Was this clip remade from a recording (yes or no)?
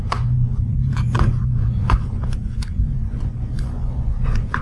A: yes